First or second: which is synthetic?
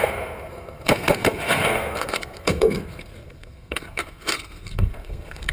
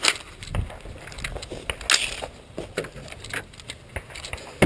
first